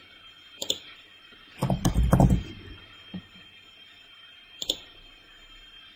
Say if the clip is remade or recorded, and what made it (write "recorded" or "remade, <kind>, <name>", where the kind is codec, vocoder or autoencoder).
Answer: recorded